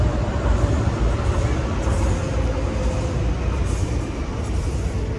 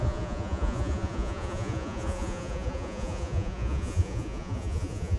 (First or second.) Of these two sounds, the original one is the first